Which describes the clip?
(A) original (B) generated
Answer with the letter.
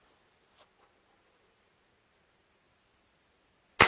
A